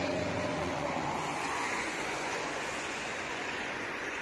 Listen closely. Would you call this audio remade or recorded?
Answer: remade